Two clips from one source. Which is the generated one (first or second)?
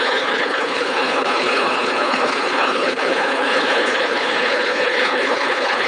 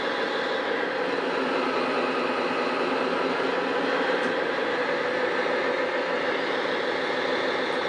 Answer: first